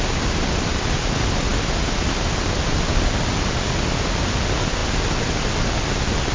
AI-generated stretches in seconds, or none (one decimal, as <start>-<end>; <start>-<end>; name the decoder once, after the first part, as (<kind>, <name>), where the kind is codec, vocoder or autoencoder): none